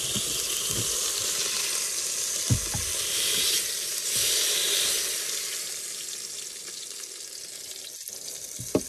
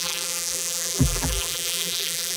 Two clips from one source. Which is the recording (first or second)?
first